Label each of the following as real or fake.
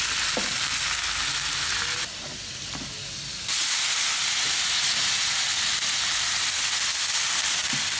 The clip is real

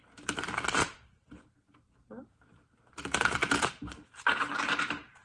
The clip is fake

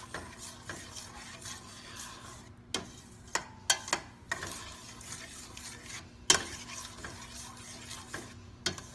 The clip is real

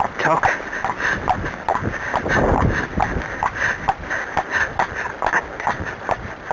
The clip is real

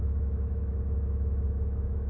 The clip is fake